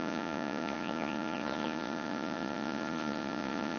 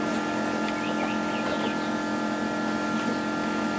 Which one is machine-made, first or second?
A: first